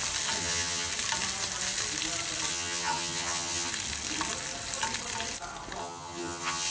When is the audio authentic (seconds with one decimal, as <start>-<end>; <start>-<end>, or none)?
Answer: 0.0-0.4; 0.9-2.5; 3.7-5.8